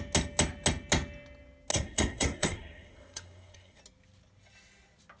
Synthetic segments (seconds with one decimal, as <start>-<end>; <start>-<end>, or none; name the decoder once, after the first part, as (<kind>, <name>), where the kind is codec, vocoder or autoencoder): 1.7-3.8 (codec, SNAC)